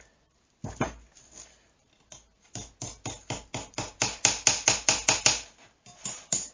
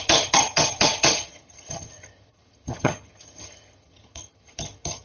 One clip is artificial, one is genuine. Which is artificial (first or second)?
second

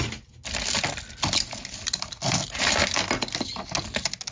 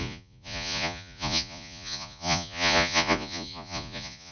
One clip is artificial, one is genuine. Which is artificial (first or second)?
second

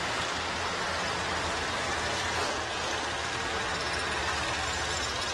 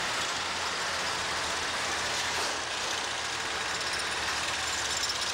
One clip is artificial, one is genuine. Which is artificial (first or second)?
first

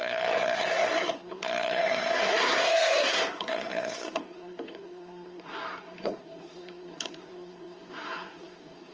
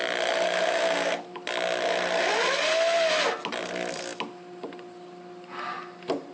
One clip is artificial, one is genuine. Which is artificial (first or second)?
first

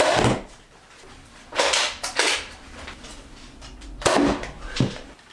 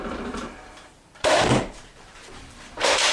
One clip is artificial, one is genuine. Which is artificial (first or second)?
second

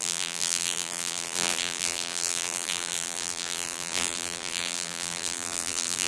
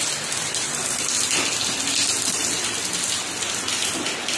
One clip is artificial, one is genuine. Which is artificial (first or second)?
first